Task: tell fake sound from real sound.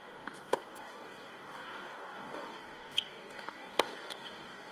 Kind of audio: fake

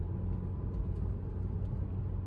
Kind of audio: real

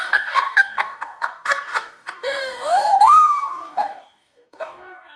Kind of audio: fake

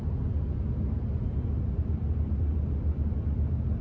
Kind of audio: real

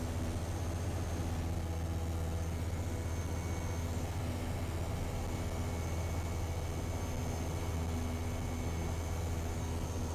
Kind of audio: real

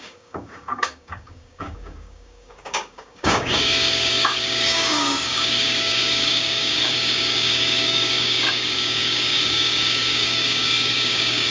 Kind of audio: fake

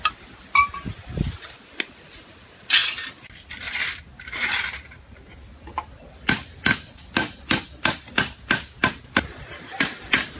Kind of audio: real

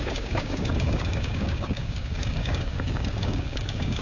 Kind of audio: fake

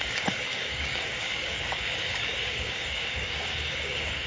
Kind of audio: fake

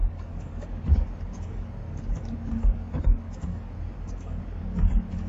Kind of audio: fake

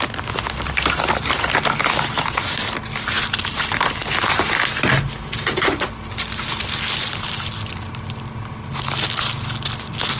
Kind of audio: real